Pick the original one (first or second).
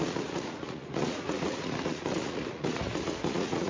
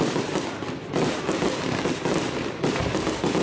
second